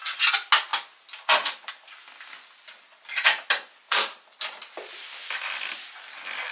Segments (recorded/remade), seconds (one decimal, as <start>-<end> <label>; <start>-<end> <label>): 0.0-3.8 recorded; 3.8-5.8 remade; 5.8-6.5 recorded